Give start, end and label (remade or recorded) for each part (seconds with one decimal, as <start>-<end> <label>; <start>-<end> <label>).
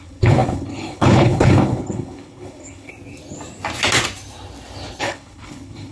0.0-2.9 remade; 2.9-5.0 recorded; 5.0-5.9 remade